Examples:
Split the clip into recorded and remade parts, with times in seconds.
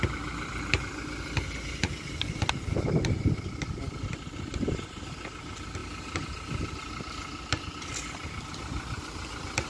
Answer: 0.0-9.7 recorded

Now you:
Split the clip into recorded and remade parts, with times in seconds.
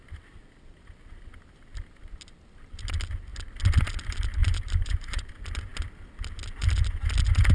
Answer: 0.0-4.4 recorded; 4.4-5.3 remade; 5.3-7.5 recorded